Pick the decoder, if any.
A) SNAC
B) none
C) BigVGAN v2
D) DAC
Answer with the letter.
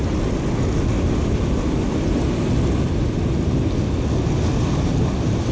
B